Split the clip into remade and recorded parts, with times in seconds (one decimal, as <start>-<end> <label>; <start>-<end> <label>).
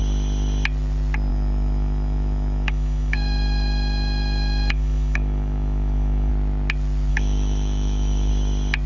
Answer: 0.0-1.3 recorded; 1.3-6.3 remade; 6.3-7.1 recorded; 7.1-8.3 remade; 8.3-8.9 recorded